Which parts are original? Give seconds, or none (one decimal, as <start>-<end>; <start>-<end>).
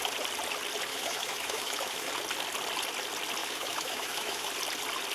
0.0-0.9; 2.1-3.4; 4.5-5.1